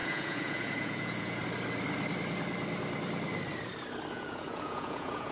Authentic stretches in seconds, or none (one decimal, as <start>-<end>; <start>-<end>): 1.4-4.1